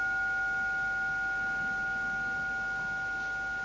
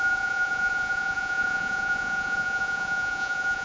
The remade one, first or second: second